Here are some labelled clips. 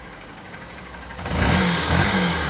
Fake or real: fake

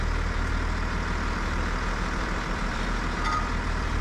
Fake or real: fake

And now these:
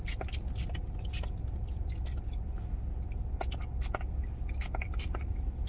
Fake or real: real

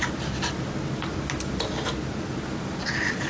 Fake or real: real